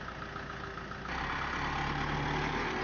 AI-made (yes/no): no